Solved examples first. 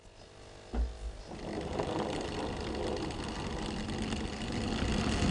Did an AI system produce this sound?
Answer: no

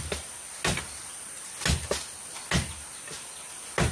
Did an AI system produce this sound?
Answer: no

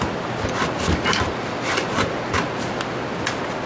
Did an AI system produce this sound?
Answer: no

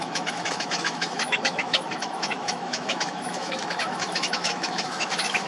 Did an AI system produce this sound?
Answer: yes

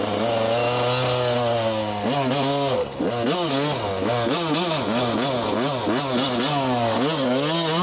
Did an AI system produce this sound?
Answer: no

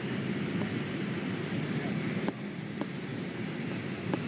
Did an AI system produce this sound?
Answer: no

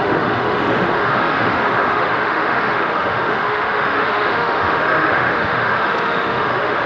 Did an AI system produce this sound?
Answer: yes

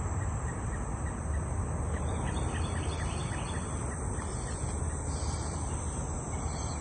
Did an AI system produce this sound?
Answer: no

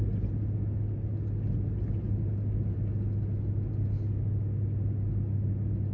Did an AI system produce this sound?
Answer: no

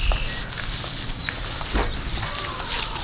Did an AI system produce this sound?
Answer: no